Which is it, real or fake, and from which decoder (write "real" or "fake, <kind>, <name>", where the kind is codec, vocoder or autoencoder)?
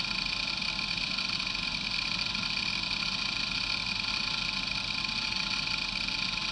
real